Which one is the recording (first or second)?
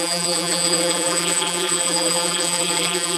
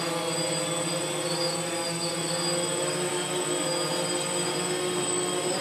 second